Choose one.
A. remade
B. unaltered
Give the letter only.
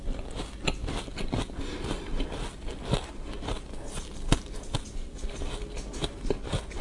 B